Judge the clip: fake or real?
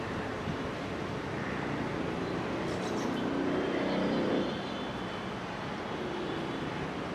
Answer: real